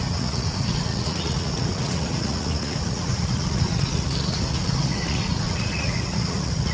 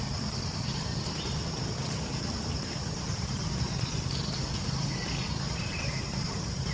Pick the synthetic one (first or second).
first